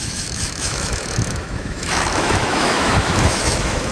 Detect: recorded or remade remade